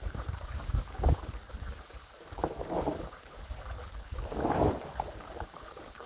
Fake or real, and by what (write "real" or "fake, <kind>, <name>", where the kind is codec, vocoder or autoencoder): fake, codec, DAC